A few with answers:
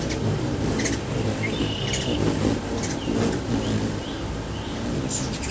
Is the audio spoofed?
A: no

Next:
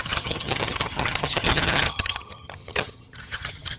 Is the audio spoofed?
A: yes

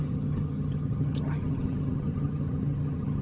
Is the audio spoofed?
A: yes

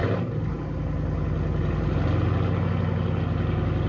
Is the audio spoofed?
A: no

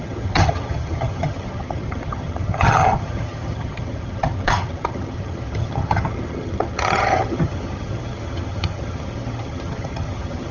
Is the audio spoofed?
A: yes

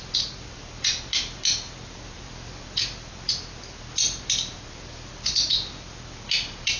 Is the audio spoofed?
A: no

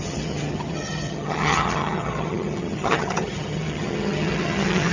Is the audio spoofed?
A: yes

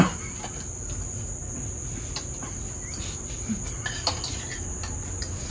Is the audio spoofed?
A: no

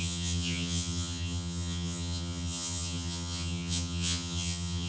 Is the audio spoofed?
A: yes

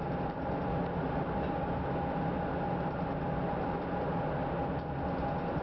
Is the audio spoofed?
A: no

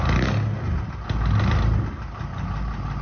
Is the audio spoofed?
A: no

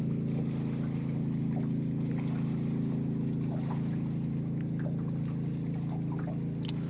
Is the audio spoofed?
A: no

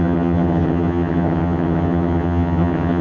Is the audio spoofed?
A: yes